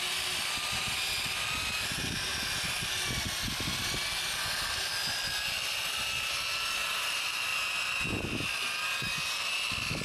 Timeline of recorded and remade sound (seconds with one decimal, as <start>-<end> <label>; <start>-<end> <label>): 0.0-10.0 recorded

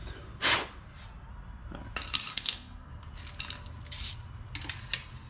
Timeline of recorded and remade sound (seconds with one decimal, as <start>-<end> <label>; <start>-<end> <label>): 0.0-2.3 recorded; 2.3-3.0 remade; 3.0-5.3 recorded

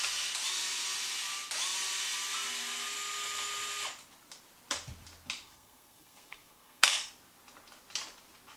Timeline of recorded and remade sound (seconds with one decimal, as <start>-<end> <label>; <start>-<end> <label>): 0.0-5.4 recorded; 5.4-7.1 remade; 7.1-8.6 recorded